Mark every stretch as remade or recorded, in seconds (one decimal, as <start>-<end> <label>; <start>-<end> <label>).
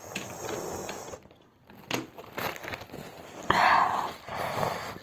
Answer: 0.0-5.0 recorded